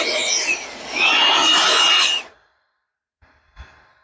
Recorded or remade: recorded